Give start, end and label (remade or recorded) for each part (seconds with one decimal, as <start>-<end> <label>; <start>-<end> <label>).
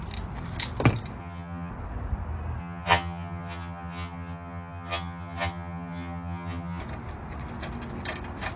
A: 0.0-1.2 recorded; 1.2-1.7 remade; 1.7-2.6 recorded; 2.6-6.8 remade; 6.8-8.6 recorded